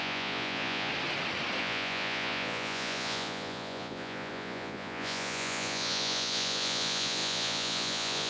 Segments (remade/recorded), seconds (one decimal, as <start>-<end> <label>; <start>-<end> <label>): 0.0-0.9 remade; 0.9-1.6 recorded; 1.6-8.3 remade